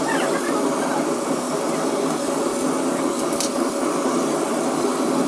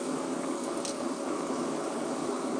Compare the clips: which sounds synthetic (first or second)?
second